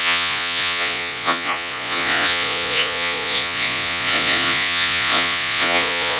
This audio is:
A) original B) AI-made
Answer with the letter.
B